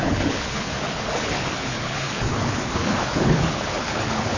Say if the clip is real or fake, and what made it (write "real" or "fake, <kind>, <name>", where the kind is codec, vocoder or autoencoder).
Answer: fake, codec, HILCodec